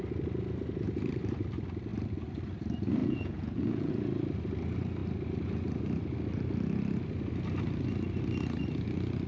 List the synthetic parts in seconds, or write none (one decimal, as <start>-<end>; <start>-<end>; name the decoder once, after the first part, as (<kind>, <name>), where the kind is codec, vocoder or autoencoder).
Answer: 3.0-3.9 (vocoder, Vocos)